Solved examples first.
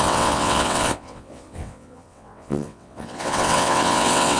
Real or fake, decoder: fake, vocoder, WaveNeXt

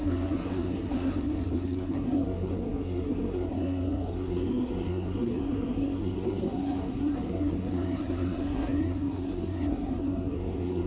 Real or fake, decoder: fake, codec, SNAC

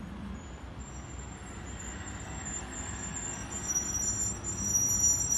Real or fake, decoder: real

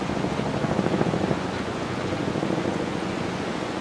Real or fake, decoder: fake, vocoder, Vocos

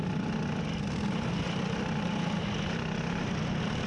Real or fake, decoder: real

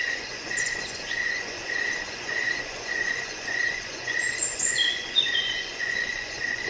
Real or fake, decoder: fake, vocoder, Vocos